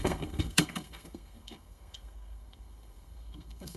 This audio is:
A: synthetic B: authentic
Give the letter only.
A